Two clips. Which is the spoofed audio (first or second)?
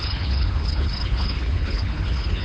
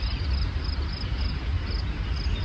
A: first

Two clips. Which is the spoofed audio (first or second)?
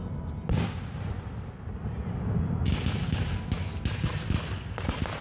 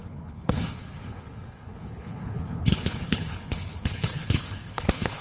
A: second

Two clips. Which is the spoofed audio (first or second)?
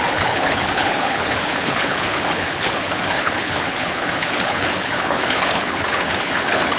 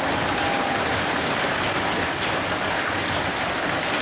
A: first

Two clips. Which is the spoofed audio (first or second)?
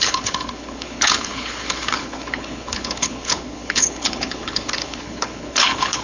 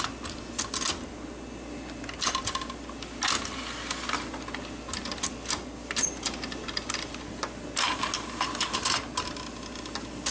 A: first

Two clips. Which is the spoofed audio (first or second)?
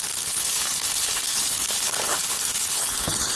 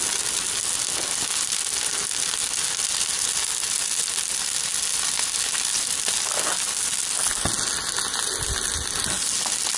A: first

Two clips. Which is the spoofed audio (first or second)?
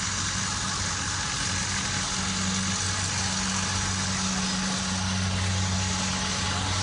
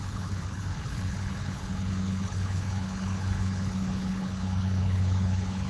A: second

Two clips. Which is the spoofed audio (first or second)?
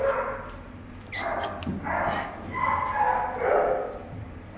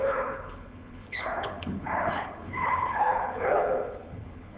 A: second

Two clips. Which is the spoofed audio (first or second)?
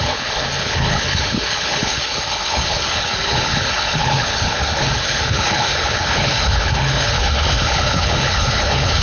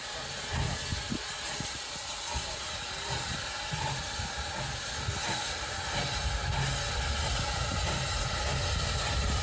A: first